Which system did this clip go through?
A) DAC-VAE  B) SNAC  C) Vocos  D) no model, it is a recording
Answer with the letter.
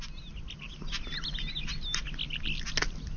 D